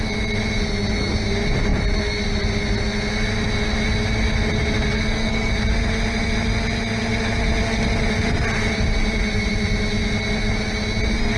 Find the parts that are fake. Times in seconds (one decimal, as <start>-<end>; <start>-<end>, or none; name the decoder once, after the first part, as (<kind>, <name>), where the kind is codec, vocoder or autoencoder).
4.9-5.5 (codec, SNAC)